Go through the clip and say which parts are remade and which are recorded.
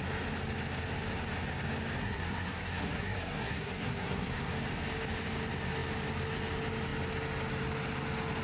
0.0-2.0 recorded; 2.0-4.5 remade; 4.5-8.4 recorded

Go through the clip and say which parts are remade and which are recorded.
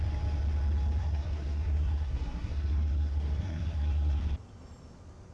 0.0-1.0 recorded; 1.0-4.2 remade; 4.2-5.3 recorded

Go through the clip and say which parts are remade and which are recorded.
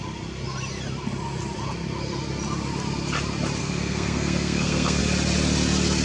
0.0-3.6 recorded; 3.6-5.0 remade; 5.0-6.0 recorded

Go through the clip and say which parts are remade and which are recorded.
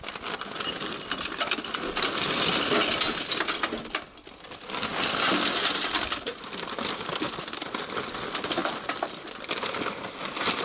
0.0-10.6 recorded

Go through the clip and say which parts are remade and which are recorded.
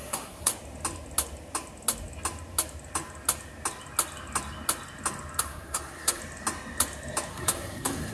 0.0-0.5 remade; 0.5-5.4 recorded; 5.4-6.2 remade; 6.2-7.3 recorded; 7.3-8.1 remade